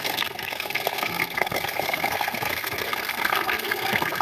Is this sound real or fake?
fake